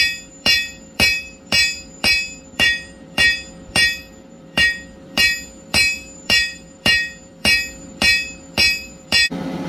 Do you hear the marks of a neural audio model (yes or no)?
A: yes